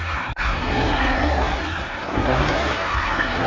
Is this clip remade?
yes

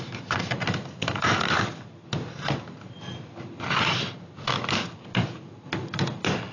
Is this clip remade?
no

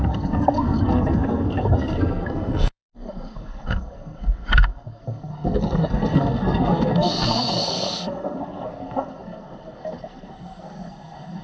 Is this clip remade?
yes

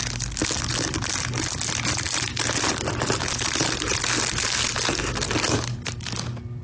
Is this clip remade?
no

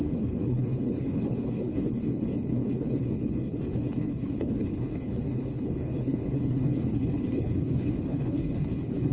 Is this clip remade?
yes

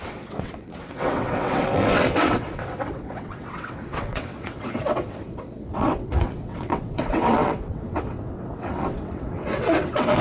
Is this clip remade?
yes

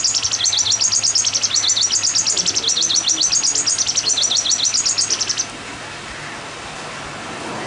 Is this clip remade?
no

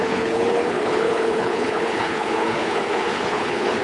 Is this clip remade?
yes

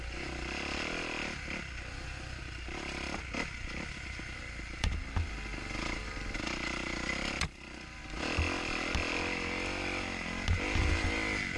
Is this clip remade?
no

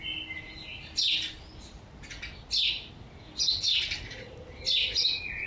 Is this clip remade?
no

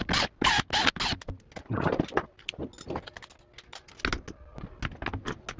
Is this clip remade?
no